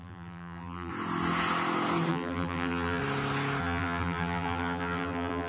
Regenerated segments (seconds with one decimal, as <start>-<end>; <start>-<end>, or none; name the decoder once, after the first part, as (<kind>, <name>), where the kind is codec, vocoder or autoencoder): 0.0-0.9 (vocoder, BigVGAN v2); 2.1-3.0; 3.6-5.5

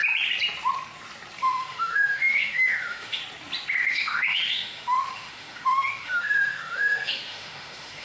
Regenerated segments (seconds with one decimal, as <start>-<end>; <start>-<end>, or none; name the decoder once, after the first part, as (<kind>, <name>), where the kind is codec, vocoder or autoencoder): 1.4-3.2 (autoencoder, DAC-VAE); 3.8-8.0

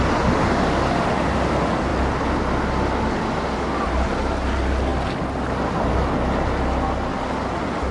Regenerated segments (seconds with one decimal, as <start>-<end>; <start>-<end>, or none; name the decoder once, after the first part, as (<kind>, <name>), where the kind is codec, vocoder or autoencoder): none

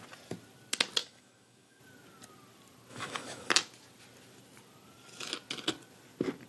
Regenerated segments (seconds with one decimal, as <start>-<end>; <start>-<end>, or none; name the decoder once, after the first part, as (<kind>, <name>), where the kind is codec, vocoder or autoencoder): 1.0-1.8 (autoencoder, DAC-VAE); 2.9-3.5

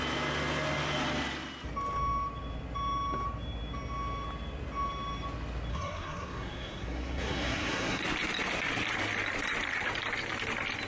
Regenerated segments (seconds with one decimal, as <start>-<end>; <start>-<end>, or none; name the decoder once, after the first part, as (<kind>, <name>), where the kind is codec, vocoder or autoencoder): 5.7-8.0 (codec, SNAC)

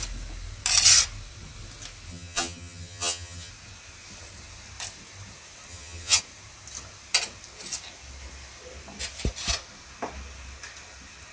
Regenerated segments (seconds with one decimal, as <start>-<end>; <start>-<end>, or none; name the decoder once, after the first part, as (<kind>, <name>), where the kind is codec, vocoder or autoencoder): 2.1-3.5 (vocoder, HiFi-GAN); 5.7-6.2